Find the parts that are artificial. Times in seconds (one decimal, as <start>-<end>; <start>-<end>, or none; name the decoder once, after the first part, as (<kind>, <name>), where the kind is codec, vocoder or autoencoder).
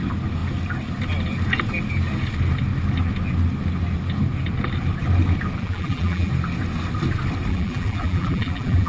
5.6-6.3 (vocoder, BigVGAN v2); 7.5-8.9